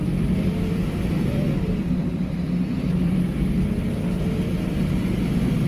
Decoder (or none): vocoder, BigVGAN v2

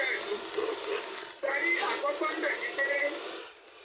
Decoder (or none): none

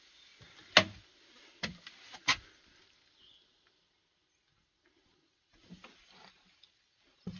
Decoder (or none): none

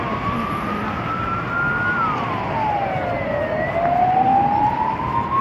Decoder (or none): none